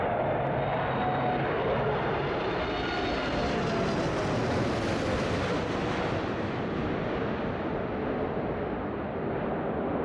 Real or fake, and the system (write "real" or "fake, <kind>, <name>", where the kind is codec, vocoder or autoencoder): real